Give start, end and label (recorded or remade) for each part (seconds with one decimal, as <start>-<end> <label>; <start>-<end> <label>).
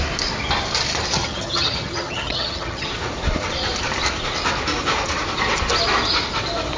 0.0-1.2 recorded; 1.2-2.9 remade; 2.9-6.8 recorded